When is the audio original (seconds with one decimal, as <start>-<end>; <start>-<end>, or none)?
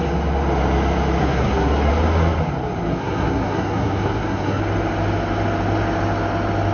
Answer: 0.0-1.2; 1.9-2.9; 4.6-6.7